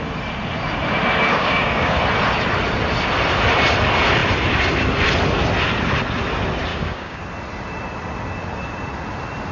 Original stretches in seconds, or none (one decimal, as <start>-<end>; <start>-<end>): 0.0-1.3; 2.0-6.7; 7.2-9.5